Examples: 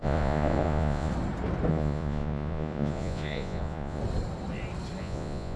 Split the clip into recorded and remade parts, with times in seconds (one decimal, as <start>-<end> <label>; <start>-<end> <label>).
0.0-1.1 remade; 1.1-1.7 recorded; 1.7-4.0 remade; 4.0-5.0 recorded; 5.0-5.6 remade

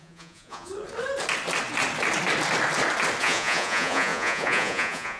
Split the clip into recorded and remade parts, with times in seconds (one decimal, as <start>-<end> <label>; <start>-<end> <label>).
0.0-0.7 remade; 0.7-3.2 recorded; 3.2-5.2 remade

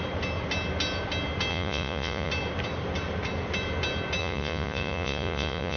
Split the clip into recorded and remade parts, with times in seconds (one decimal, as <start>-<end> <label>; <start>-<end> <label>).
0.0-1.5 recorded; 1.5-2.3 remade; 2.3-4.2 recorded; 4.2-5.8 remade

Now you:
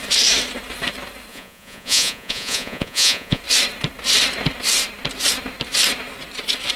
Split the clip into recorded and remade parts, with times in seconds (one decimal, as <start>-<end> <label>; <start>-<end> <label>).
0.0-1.3 recorded; 1.3-3.4 remade; 3.4-6.8 recorded

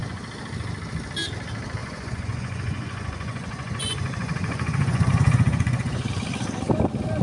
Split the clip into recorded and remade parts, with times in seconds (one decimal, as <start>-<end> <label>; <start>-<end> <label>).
0.0-1.8 recorded; 1.8-6.1 remade; 6.1-7.2 recorded

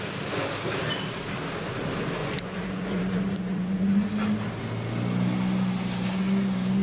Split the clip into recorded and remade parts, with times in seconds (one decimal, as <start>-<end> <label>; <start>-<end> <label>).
0.0-2.2 recorded; 2.2-4.1 remade; 4.1-6.8 recorded

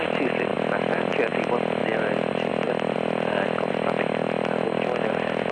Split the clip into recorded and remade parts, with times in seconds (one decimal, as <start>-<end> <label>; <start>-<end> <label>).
0.0-5.5 recorded

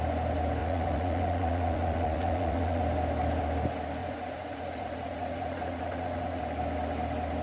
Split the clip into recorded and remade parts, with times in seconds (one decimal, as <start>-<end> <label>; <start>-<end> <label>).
0.0-0.6 recorded; 0.6-2.8 remade; 2.8-4.0 recorded; 4.0-6.4 remade; 6.4-7.4 recorded